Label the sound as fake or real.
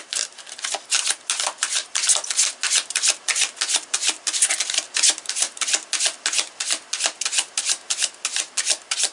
real